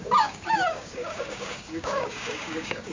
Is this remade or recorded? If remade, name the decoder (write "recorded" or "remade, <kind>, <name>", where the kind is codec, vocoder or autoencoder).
remade, codec, DAC